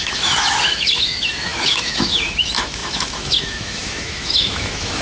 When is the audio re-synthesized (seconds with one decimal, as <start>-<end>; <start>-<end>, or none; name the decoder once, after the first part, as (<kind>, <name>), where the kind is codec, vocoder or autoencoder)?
0.0-5.0 (autoencoder, DAC-VAE)